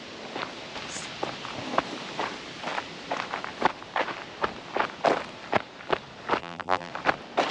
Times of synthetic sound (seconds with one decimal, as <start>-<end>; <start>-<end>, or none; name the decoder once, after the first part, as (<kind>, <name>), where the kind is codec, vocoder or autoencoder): 6.4-6.9 (vocoder, BigVGAN v2)